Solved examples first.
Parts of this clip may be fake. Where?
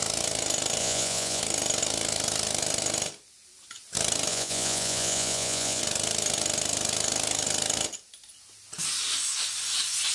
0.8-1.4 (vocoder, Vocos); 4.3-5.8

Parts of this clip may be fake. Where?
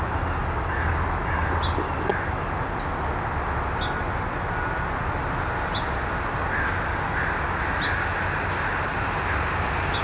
none